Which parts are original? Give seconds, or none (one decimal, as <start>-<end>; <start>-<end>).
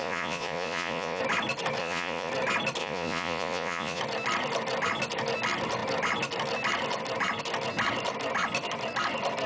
1.2-1.8; 2.3-2.8; 4.0-9.5